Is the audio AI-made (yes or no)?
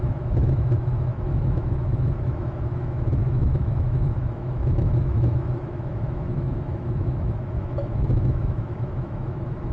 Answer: yes